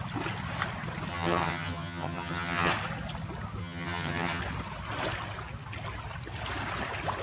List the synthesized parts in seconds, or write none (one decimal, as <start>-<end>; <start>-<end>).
1.1-2.7; 3.6-4.4